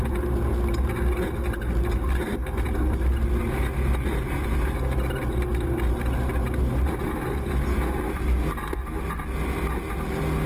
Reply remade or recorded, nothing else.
recorded